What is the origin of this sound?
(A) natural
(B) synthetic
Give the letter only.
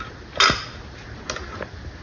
A